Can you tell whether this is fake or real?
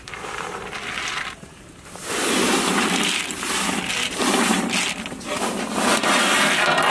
real